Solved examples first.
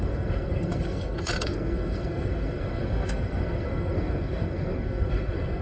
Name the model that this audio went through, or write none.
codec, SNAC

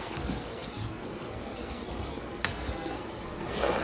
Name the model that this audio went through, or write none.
codec, SNAC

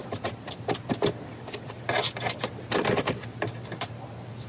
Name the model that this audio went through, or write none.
none